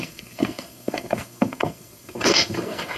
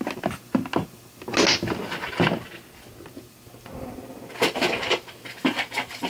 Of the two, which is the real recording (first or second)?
second